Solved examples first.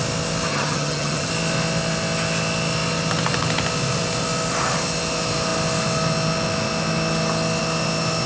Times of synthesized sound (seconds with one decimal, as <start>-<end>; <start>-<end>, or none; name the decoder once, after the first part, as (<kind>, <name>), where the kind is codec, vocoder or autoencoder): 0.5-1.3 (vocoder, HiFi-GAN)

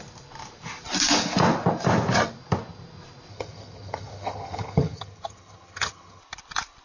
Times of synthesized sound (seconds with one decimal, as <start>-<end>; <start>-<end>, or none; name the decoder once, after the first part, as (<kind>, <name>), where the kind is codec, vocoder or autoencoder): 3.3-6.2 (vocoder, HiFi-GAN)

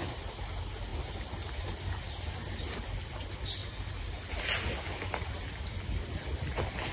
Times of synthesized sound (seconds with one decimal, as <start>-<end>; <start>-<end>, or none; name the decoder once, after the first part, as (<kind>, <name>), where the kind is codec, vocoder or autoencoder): none

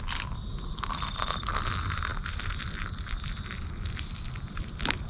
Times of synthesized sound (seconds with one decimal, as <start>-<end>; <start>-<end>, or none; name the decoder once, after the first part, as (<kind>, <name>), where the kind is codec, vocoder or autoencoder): none

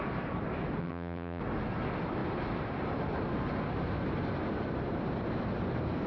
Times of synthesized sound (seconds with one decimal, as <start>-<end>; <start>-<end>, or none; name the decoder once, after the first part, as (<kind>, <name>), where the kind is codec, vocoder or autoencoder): 0.8-1.4 (vocoder, HiFi-GAN)

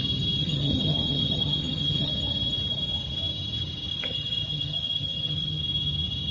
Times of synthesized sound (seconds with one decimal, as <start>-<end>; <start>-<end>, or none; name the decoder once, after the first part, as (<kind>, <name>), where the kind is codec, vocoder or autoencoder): 0.4-2.1 (vocoder, HiFi-GAN); 3.9-5.6

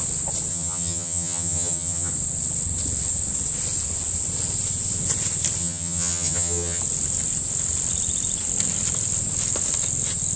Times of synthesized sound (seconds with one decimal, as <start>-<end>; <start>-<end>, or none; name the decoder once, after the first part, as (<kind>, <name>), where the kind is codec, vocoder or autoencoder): 0.5-2.1 (vocoder, HiFi-GAN); 5.6-6.8

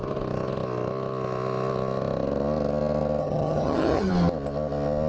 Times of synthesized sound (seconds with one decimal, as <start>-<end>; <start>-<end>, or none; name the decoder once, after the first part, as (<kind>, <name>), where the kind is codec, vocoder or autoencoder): 3.2-4.1 (vocoder, HiFi-GAN)